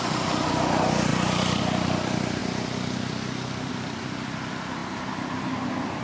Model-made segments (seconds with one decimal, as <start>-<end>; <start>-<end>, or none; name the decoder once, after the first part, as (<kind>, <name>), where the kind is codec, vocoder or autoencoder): 1.1-1.6 (vocoder, BigVGAN v2)